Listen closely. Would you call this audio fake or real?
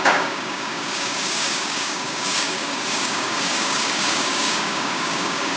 fake